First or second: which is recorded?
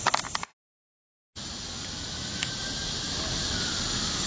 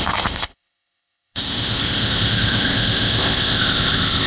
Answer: first